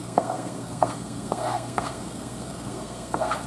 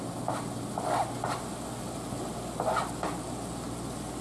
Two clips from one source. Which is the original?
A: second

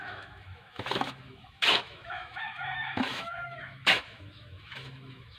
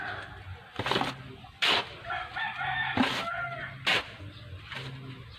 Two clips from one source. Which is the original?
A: second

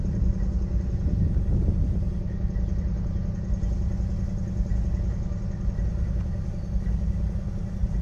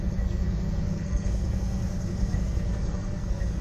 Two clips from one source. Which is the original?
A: first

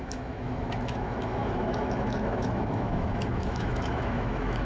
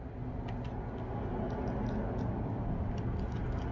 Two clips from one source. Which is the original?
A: second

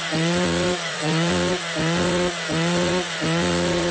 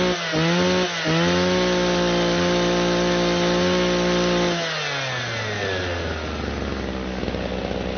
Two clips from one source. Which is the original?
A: second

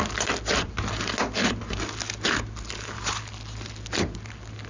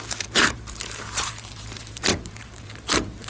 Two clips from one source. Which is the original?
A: first